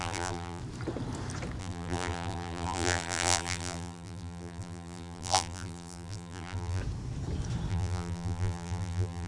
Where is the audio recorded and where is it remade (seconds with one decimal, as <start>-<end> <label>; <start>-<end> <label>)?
0.0-0.6 remade; 0.6-1.6 recorded; 1.6-6.8 remade; 6.8-7.7 recorded; 7.7-9.3 remade